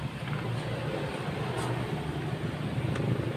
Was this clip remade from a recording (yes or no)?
no